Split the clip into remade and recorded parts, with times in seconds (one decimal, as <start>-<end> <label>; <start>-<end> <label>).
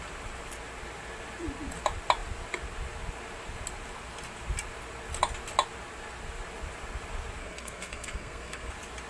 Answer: 0.0-7.4 recorded; 7.4-8.7 remade; 8.7-9.1 recorded